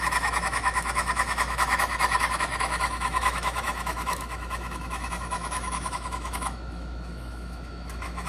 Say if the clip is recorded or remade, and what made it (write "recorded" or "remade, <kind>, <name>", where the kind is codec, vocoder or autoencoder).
remade, autoencoder, DAC-VAE